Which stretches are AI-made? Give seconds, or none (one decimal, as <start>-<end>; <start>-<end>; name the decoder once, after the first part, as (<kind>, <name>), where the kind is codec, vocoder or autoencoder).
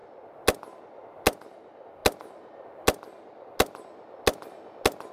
none